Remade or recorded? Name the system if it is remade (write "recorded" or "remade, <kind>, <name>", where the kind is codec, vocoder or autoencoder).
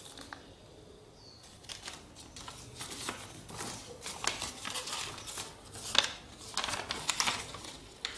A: recorded